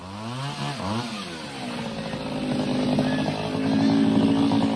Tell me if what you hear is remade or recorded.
recorded